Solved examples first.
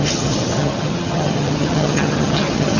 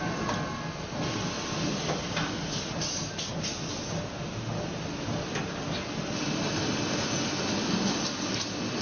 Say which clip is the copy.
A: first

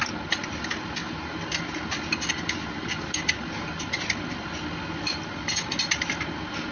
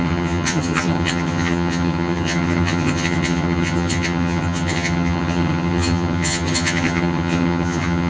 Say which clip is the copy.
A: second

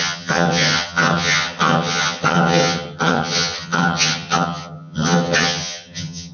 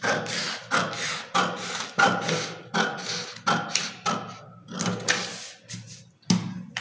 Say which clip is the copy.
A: first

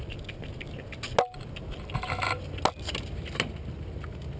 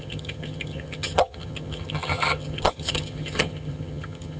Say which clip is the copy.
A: second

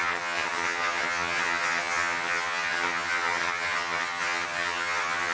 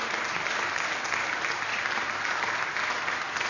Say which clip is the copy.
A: first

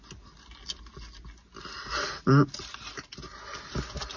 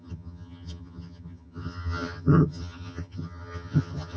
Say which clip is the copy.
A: second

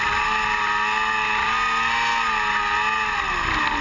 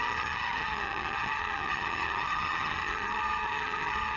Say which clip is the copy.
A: second